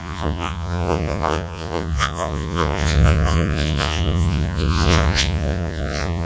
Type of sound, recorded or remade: remade